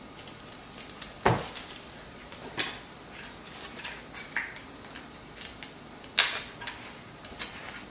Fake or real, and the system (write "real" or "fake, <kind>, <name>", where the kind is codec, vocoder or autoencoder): real